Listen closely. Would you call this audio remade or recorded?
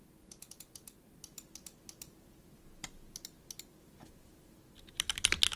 recorded